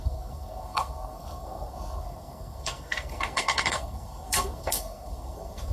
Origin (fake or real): fake